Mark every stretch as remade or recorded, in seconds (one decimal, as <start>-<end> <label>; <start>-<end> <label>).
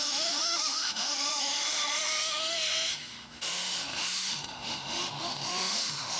0.0-6.2 remade